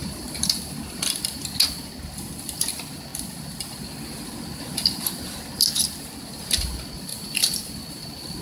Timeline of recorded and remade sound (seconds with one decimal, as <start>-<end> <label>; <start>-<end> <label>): 0.0-7.1 recorded; 7.1-7.7 remade; 7.7-8.4 recorded